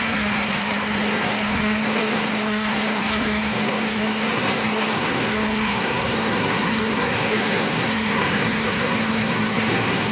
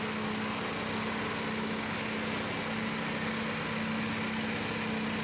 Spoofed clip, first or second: first